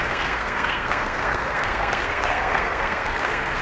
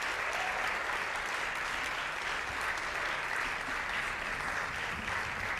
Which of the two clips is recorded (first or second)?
second